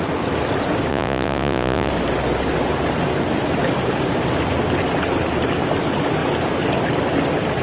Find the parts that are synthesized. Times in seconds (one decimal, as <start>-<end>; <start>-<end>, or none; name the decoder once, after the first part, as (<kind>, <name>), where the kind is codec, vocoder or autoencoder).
0.9-1.9 (vocoder, Vocos)